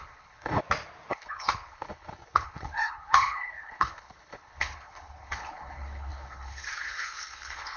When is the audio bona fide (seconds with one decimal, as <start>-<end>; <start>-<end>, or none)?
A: 0.6-1.1